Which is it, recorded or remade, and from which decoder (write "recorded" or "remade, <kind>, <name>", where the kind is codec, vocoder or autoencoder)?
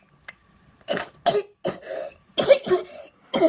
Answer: recorded